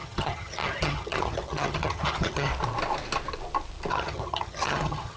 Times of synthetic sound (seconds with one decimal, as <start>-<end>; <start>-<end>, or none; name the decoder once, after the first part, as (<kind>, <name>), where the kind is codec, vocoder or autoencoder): 0.0-2.5 (vocoder, HiFi-GAN); 3.9-5.2